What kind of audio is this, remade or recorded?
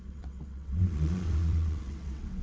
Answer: remade